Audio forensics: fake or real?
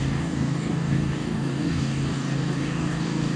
fake